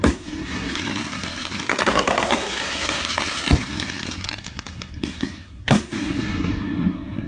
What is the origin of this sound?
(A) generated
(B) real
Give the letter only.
A